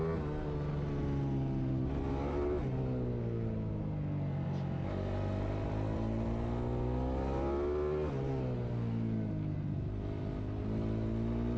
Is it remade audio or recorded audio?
recorded